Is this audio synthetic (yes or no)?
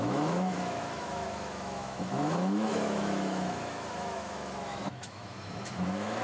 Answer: yes